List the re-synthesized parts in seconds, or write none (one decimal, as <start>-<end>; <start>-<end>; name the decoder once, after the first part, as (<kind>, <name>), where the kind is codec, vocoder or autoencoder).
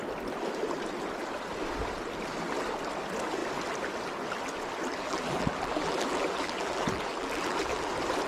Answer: 4.9-7.9 (vocoder, BigVGAN v2)